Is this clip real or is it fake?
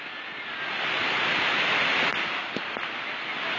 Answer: real